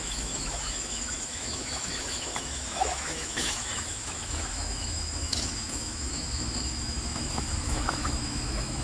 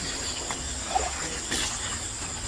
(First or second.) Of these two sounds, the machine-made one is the first